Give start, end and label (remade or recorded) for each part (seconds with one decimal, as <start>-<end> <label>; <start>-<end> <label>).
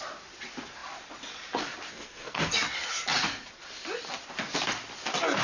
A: 0.0-1.9 recorded; 1.9-2.5 remade; 2.5-5.4 recorded